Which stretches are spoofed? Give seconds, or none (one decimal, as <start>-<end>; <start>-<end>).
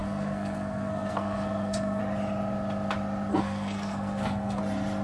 0.0-2.0; 3.3-4.6